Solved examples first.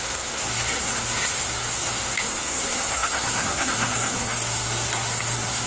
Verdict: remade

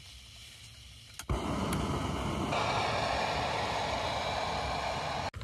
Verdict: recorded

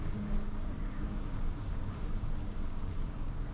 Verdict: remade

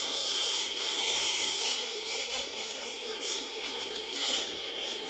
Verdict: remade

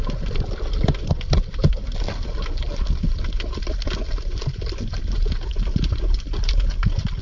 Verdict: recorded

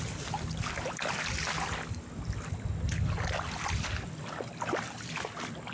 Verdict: recorded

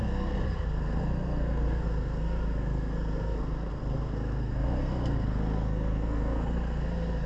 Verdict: remade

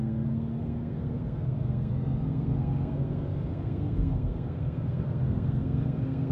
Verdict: remade